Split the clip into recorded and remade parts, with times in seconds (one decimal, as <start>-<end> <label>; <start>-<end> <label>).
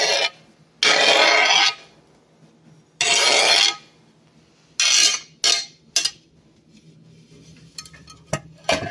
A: 0.0-8.9 recorded